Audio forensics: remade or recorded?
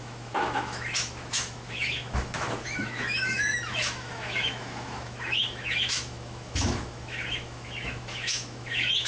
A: remade